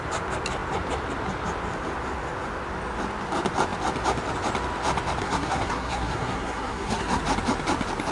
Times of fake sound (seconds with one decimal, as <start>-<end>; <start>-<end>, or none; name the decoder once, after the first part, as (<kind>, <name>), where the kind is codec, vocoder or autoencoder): 5.2-7.2 (codec, SNAC)